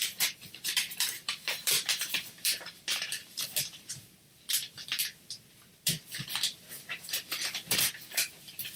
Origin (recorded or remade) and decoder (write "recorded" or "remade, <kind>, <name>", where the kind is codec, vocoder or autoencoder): remade, vocoder, BigVGAN v2